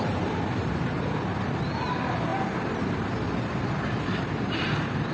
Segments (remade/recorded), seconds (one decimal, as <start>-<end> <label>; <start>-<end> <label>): 0.0-5.1 recorded